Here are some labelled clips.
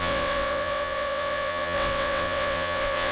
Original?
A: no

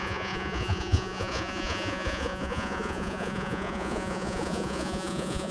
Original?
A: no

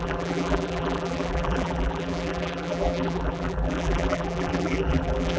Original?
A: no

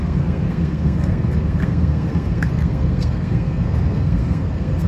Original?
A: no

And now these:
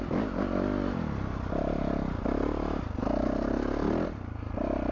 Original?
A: yes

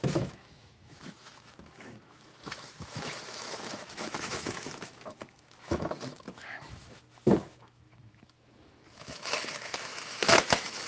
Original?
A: no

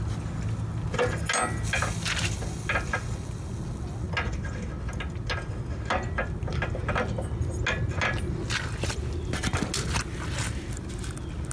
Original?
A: yes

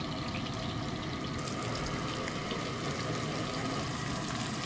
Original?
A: yes